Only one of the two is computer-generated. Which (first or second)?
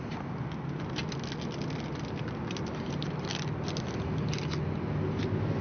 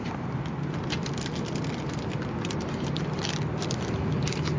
second